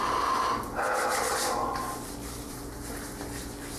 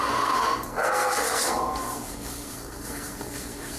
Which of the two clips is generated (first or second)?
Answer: second